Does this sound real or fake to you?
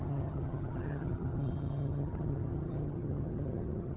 fake